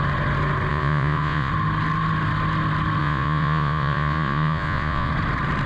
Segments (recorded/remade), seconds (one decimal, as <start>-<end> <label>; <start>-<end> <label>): 0.0-0.7 recorded; 0.7-1.5 remade; 1.5-3.0 recorded; 3.0-5.1 remade; 5.1-5.7 recorded